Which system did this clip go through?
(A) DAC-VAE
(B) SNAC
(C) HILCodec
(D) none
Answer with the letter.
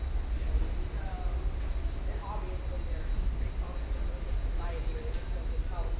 D